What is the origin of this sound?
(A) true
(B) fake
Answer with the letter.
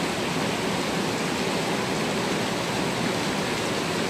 A